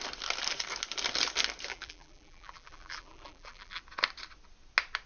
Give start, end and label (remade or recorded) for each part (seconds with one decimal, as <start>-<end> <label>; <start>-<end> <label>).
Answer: 0.0-1.7 recorded; 1.7-3.8 remade; 3.8-5.1 recorded